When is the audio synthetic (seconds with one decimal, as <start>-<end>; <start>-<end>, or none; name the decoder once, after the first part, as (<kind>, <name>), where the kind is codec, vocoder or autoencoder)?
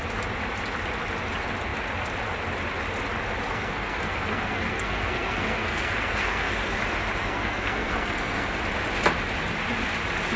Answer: 3.5-6.8 (codec, SNAC); 7.2-8.6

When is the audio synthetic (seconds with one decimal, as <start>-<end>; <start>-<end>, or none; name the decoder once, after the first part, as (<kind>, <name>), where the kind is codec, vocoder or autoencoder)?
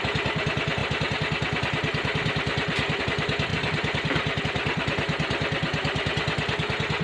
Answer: 3.5-4.4 (vocoder, BigVGAN v2)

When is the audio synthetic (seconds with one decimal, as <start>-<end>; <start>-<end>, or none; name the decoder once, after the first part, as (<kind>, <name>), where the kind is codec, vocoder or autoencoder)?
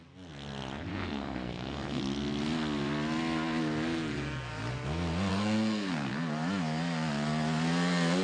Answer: 0.9-2.0 (codec, SNAC); 5.3-6.1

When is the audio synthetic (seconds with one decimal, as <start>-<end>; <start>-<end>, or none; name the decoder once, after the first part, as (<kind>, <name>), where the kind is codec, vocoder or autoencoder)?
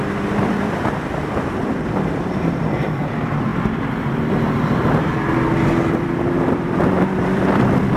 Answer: 0.0-3.5 (vocoder, BigVGAN v2); 5.9-8.0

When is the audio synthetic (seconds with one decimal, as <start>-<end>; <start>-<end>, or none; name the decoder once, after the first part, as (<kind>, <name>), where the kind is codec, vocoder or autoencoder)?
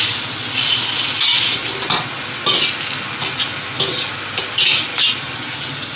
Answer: none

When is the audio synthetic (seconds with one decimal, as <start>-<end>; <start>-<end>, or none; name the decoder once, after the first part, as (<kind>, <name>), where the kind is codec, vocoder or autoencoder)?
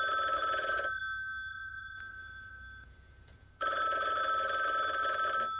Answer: 0.4-1.0 (vocoder, Vocos); 1.5-4.2